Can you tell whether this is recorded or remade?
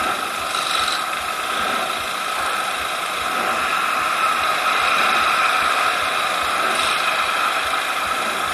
recorded